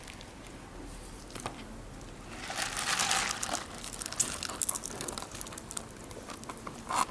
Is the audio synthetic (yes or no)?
no